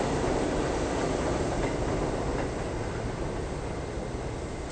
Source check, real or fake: real